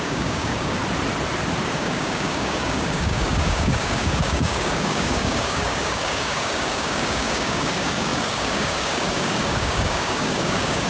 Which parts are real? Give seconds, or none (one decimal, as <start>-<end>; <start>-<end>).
0.8-1.7